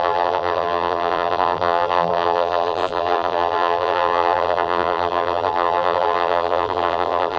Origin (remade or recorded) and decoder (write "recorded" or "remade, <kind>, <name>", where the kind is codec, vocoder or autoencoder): remade, vocoder, BigVGAN v2